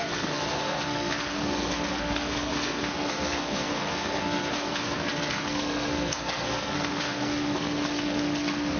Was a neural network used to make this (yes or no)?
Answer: yes